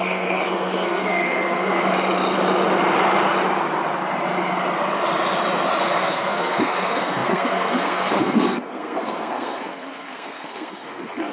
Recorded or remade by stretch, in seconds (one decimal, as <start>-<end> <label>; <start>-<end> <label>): 0.0-1.7 remade; 1.7-5.8 recorded; 5.8-11.3 remade